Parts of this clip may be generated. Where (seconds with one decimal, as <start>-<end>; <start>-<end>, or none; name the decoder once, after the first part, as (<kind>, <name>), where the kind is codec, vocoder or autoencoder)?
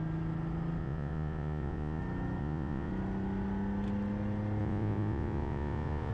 0.8-2.0 (vocoder, Vocos); 2.4-2.9; 4.6-6.1